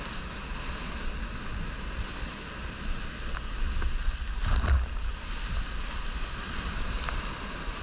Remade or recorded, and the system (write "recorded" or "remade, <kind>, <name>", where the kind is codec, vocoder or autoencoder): recorded